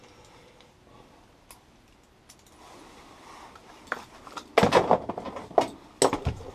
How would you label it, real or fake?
real